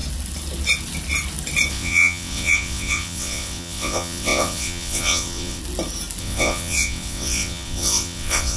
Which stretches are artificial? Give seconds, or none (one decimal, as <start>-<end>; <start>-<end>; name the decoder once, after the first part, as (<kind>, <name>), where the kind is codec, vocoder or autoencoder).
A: 1.7-5.6 (vocoder, WaveNeXt); 6.2-8.6

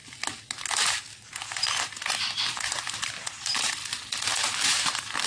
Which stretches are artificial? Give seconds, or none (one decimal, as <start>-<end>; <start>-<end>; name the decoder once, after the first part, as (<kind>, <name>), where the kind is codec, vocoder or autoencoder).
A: none

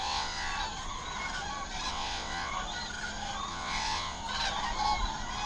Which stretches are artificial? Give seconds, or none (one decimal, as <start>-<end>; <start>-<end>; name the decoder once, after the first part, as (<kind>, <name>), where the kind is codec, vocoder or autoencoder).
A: 0.0-0.5 (vocoder, WaveNeXt); 1.9-2.5; 3.5-4.2